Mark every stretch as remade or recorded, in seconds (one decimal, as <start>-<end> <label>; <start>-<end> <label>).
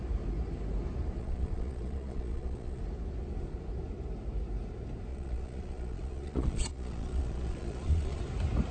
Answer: 0.0-1.2 recorded; 1.2-2.8 remade; 2.8-5.1 recorded; 5.1-8.2 remade; 8.2-8.7 recorded